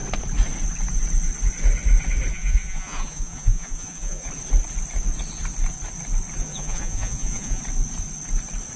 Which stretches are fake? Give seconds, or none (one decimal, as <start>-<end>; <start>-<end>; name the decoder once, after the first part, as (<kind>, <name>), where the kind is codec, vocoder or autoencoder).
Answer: 2.3-4.3 (vocoder, Vocos); 6.4-7.6